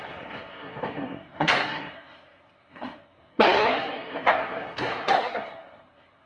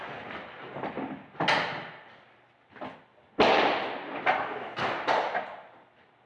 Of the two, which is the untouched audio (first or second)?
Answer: second